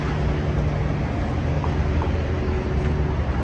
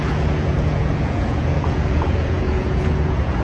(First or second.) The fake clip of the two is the second